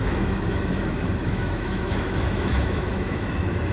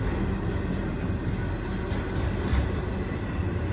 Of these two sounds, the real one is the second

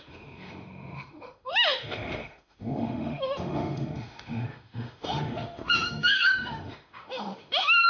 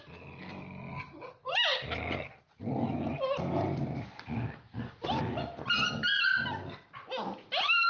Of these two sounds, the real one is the second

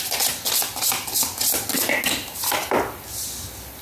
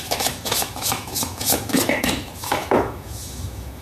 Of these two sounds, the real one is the first